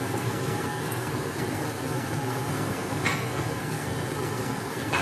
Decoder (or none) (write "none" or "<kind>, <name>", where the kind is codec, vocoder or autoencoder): codec, SNAC